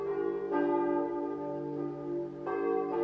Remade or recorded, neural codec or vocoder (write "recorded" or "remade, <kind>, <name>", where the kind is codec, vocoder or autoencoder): recorded